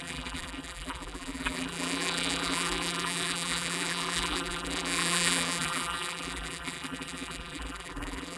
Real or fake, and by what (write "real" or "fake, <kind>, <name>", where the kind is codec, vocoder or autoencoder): fake, vocoder, BigVGAN v2